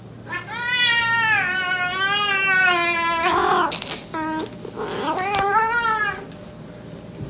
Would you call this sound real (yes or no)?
yes